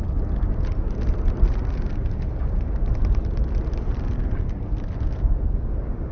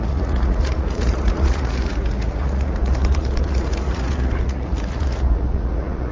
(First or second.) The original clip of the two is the first